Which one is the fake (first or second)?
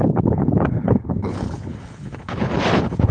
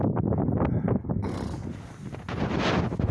first